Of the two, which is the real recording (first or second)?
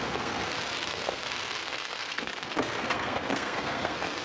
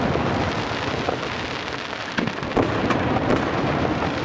second